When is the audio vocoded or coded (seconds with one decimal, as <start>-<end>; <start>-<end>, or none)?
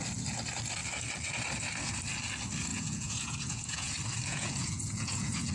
2.7-3.9; 4.3-5.5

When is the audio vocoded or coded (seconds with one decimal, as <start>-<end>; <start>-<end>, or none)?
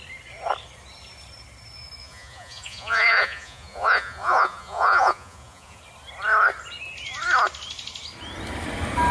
2.0-5.8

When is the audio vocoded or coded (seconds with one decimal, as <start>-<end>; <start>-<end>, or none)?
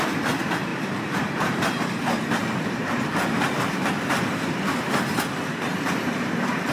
0.7-1.6; 2.4-3.9